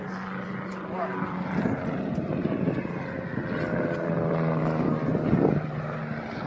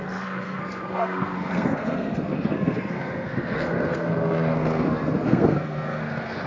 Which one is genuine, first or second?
first